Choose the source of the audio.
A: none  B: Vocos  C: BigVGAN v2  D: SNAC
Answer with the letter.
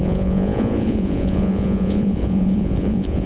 B